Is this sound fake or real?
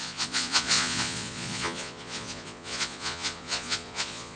fake